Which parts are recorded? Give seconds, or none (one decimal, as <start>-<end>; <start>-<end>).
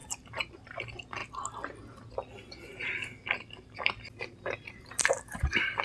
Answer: 1.2-4.7